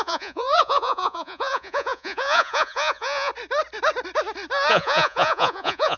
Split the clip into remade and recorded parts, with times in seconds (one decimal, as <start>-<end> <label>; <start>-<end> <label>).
0.0-3.3 remade; 3.3-4.7 recorded; 4.7-6.0 remade